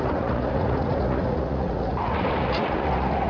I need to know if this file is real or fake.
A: fake